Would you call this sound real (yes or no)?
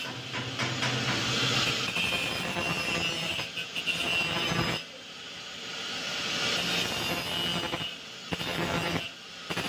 yes